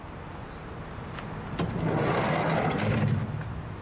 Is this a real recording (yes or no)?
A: yes